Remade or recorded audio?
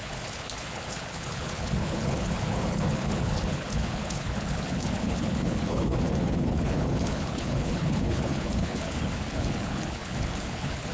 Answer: remade